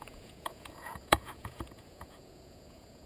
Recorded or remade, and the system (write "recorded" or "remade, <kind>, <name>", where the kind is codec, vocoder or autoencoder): remade, vocoder, Vocos